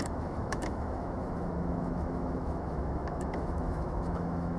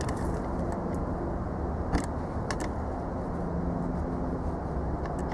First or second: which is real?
second